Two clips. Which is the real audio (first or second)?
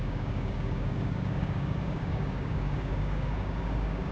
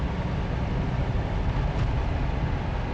second